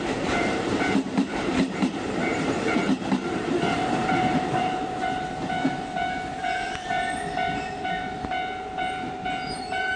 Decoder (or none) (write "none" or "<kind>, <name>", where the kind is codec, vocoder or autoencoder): vocoder, BigVGAN v2